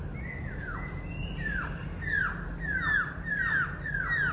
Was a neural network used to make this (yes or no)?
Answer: no